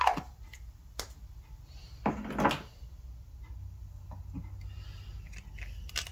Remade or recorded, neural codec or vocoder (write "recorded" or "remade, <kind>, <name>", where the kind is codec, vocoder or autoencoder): recorded